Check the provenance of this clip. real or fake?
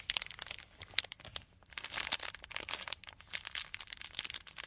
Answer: real